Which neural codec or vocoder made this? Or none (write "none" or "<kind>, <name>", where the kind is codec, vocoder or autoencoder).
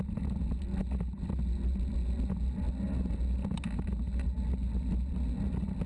none